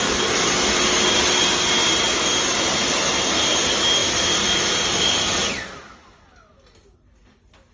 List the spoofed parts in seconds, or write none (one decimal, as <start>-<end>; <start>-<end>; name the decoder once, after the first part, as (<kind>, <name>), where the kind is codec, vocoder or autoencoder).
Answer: none